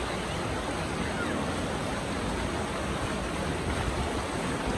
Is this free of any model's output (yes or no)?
yes